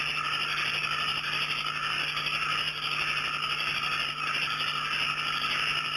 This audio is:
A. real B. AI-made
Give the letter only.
A